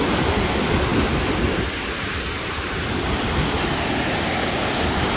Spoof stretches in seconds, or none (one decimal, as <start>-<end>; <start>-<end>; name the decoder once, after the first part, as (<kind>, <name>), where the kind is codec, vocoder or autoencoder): none